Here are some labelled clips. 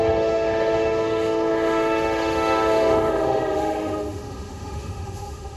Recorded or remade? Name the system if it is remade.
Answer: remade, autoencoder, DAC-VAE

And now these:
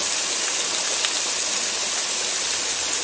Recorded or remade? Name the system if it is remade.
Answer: recorded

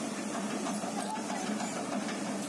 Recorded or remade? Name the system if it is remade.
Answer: remade, vocoder, BigVGAN v2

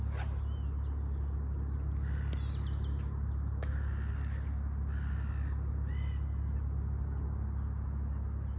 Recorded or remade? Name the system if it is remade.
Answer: recorded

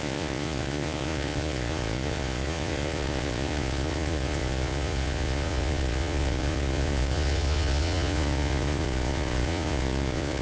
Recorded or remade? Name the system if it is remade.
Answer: remade, vocoder, Vocos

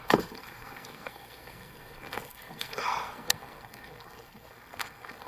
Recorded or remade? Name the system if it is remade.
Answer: remade, codec, SNAC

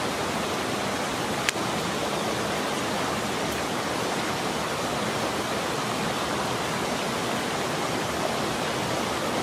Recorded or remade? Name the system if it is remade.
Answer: recorded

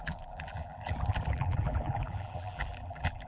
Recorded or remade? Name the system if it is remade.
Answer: remade, vocoder, BigVGAN v2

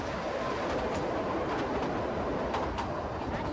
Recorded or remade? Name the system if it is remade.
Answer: recorded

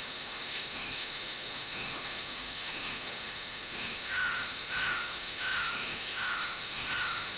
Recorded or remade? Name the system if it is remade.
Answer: remade, autoencoder, DAC-VAE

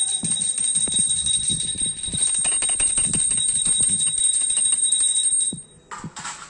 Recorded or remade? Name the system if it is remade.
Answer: recorded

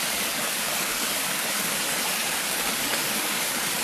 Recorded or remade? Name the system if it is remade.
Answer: remade, codec, DAC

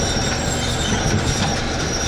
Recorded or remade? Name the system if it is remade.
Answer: recorded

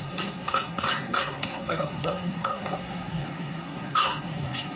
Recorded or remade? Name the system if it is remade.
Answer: remade, codec, SNAC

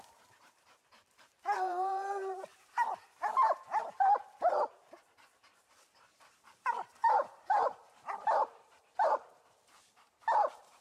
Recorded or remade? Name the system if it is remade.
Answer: remade, vocoder, BigVGAN v2